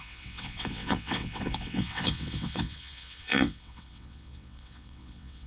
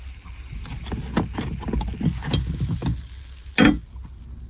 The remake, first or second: first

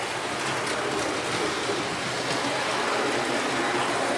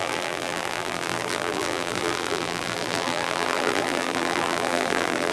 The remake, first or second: second